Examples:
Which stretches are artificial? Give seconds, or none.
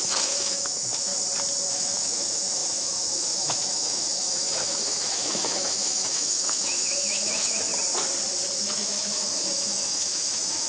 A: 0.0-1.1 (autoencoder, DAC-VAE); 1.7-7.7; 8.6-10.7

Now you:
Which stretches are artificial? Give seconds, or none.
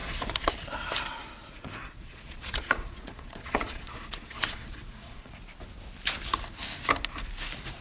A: 0.0-0.5 (vocoder, Vocos); 1.4-5.3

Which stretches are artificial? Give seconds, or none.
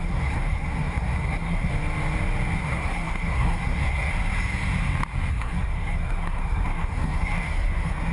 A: 0.0-1.7 (codec, SNAC); 2.6-4.1; 5.3-8.1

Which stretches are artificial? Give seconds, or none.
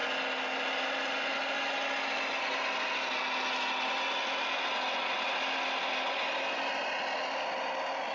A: none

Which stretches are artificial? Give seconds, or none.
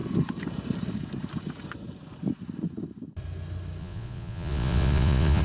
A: 3.8-5.4 (vocoder, Vocos)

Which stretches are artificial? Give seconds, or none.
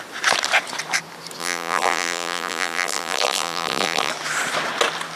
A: 1.4-4.1 (vocoder, BigVGAN v2)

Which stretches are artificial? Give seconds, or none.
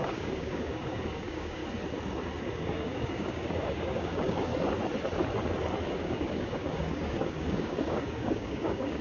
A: 0.0-1.6 (codec, DAC); 2.4-4.5; 5.9-9.0